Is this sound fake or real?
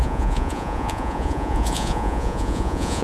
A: fake